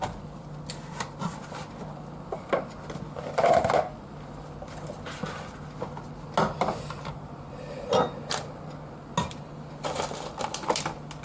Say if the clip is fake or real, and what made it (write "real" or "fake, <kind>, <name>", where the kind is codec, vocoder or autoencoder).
real